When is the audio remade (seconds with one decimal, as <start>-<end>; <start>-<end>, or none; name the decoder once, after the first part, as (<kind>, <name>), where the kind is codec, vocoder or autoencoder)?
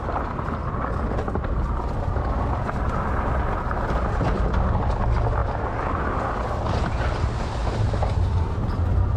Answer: 5.4-6.0 (vocoder, BigVGAN v2); 7.6-8.6